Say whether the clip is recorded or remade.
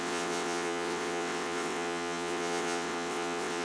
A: remade